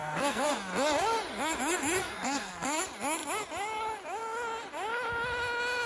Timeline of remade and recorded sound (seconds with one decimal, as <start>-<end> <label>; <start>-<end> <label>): 0.0-0.5 remade; 0.5-2.0 recorded; 2.0-2.8 remade; 2.8-5.9 recorded